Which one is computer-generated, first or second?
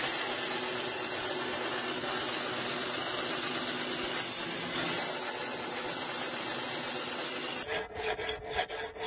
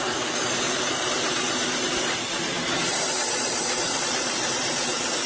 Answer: second